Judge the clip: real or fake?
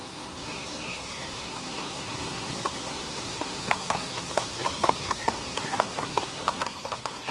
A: fake